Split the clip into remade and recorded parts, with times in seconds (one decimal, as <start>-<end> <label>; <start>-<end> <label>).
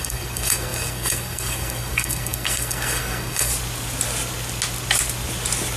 0.0-3.5 remade; 3.5-5.8 recorded